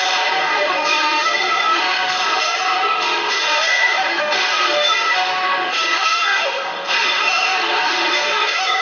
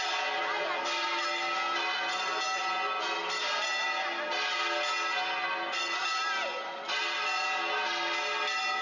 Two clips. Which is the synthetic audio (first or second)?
first